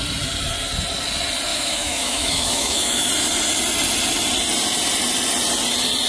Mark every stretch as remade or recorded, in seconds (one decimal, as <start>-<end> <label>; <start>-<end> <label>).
0.0-1.5 recorded; 1.5-3.1 remade; 3.1-6.1 recorded